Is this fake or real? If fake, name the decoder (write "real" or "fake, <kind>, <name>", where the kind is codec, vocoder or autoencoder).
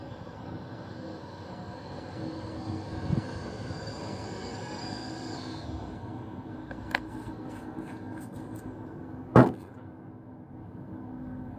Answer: fake, codec, SNAC